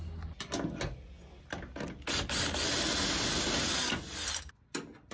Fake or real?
real